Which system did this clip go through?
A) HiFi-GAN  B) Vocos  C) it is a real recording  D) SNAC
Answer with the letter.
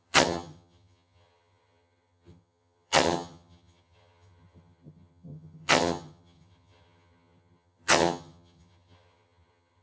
A